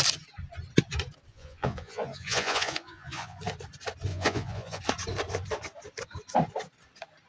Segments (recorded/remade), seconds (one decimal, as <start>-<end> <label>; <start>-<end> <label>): 0.0-1.3 recorded; 1.3-3.4 remade; 3.4-4.1 recorded; 4.1-4.8 remade; 4.8-7.3 recorded